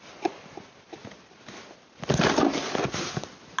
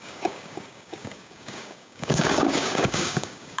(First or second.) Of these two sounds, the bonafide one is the first